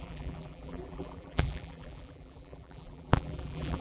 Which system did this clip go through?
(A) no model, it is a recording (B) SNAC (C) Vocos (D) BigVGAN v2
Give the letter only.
D